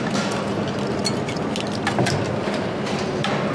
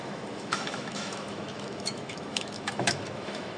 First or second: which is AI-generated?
second